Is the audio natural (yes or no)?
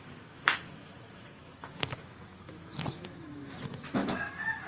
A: no